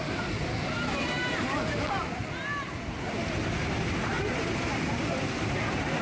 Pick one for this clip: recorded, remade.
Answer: recorded